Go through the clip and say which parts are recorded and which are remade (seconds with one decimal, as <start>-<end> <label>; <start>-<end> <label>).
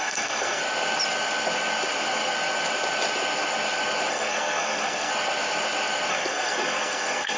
0.0-0.6 remade; 0.6-4.1 recorded; 4.1-5.1 remade; 5.1-6.1 recorded; 6.1-7.4 remade